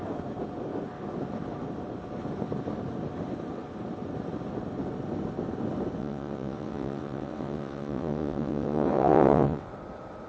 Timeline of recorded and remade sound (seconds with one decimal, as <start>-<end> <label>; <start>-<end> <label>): 0.0-6.0 recorded; 6.0-9.7 remade; 9.7-10.3 recorded